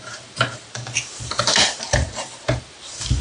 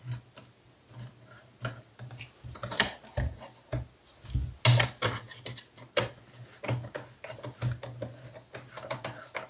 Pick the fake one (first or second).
first